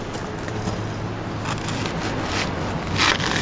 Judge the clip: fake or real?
real